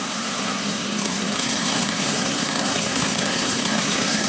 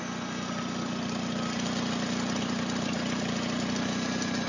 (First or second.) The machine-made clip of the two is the first